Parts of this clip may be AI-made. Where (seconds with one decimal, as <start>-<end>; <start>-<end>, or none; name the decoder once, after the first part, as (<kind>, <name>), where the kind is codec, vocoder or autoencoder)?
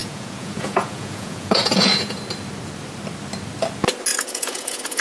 0.0-2.2 (vocoder, Vocos); 4.1-5.0